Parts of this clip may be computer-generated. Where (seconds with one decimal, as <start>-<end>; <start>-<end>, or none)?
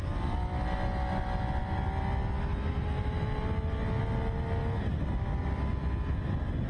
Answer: none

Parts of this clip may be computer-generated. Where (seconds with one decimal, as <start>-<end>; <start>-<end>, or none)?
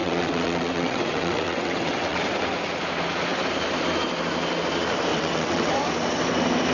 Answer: 0.0-2.2; 5.1-5.7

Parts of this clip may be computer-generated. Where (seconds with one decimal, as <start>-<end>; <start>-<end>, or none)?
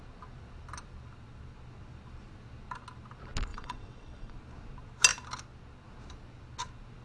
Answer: 3.5-4.3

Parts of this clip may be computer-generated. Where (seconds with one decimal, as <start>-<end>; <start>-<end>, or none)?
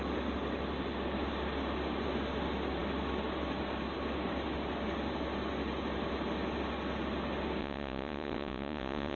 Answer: 7.6-9.2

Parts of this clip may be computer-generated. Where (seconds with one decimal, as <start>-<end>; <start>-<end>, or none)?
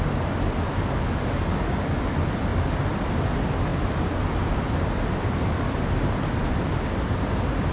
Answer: none